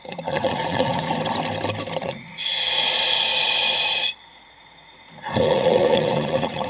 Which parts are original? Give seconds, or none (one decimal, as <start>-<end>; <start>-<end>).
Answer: 1.1-2.0; 2.5-4.3